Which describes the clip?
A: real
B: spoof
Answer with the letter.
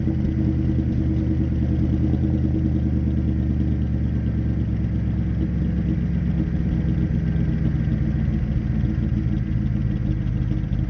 A